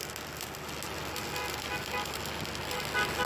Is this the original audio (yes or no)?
yes